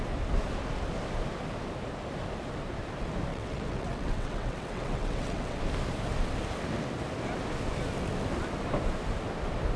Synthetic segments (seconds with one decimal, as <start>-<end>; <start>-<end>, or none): 3.3-5.6